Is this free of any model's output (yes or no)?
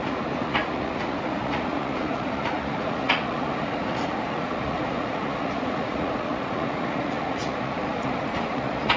no